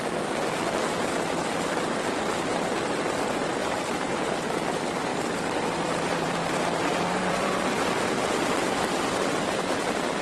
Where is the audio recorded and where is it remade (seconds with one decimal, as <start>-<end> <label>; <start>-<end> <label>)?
0.0-3.6 recorded; 3.6-4.2 remade; 4.2-5.1 recorded; 5.1-10.2 remade